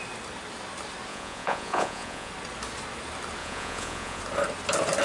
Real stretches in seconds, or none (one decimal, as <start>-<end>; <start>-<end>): 0.0-1.1; 2.3-3.4; 4.2-5.0